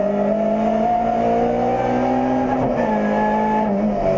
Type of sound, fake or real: real